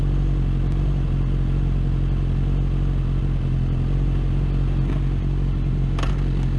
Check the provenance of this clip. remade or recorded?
recorded